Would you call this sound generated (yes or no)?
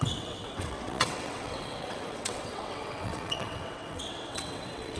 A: yes